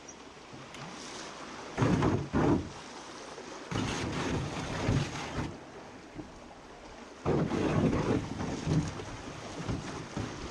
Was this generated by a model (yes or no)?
no